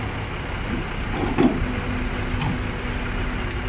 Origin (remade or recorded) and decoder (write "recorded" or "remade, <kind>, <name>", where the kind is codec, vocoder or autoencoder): recorded